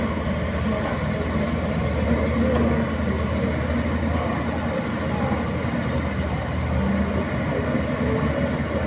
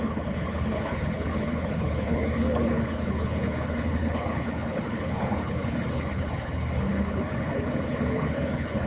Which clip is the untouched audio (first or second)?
first